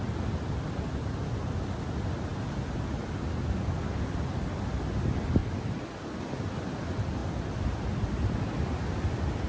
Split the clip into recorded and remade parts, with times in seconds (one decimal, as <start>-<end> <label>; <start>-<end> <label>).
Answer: 0.0-9.5 recorded